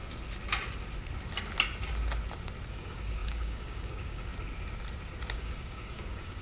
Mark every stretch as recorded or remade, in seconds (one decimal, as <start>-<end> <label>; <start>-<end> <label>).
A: 0.0-2.7 recorded; 2.7-4.3 remade; 4.3-5.3 recorded; 5.3-6.4 remade

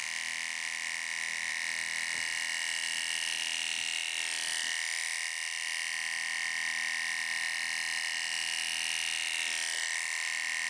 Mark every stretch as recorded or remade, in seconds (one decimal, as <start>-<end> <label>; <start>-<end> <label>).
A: 0.0-10.7 recorded

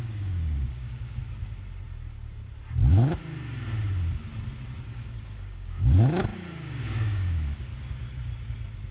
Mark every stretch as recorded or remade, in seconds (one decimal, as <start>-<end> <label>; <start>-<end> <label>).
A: 0.0-1.2 remade; 1.2-4.9 recorded; 4.9-7.7 remade; 7.7-8.9 recorded